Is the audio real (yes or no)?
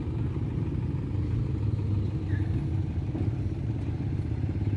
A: yes